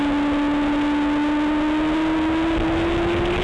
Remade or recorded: recorded